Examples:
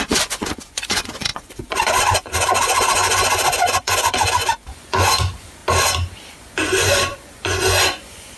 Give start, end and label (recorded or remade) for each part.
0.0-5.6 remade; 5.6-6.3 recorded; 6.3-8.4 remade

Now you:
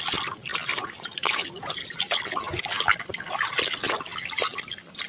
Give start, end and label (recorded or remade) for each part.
0.0-5.1 recorded

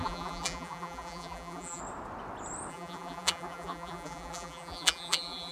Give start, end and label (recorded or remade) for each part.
0.0-1.8 remade; 1.8-2.7 recorded; 2.7-5.5 remade

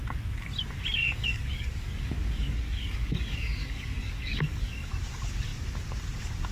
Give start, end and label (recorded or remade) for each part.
0.0-1.0 recorded; 1.0-4.9 remade; 4.9-6.5 recorded

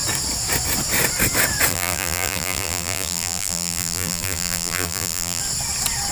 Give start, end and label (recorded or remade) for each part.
0.0-1.7 recorded; 1.7-5.4 remade; 5.4-6.1 recorded